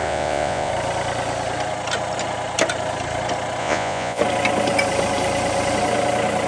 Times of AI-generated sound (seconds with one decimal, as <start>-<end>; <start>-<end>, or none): 0.0-0.7; 3.6-4.2